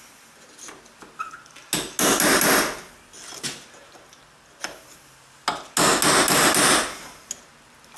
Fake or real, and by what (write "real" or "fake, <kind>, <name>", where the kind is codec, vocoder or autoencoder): real